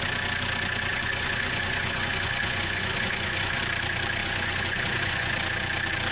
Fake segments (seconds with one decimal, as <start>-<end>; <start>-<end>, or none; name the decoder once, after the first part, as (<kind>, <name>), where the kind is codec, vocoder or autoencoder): 0.9-3.6 (vocoder, Vocos); 4.2-5.3